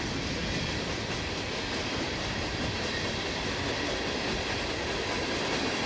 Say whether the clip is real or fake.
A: fake